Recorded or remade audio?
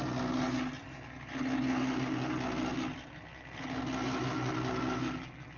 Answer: recorded